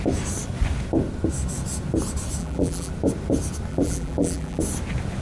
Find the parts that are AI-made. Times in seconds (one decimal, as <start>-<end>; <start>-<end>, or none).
2.4-2.9; 3.7-4.6